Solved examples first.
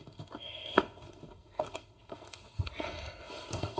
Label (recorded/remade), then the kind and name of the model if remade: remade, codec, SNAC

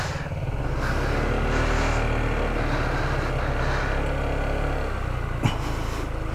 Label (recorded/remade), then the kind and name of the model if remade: recorded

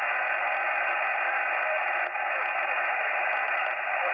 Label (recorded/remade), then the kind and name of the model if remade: recorded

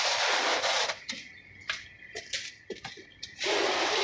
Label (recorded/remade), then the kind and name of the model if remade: remade, vocoder, BigVGAN v2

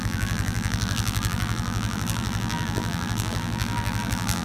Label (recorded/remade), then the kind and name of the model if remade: remade, vocoder, BigVGAN v2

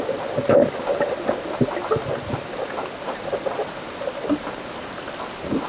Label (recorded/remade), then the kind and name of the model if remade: recorded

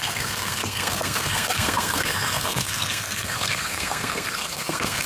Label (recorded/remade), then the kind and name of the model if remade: remade, codec, SNAC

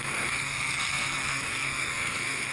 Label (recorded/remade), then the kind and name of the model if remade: remade, codec, SNAC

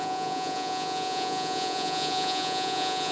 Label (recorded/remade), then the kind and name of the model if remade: remade, vocoder, Vocos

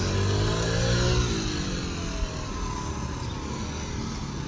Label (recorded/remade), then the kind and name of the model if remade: recorded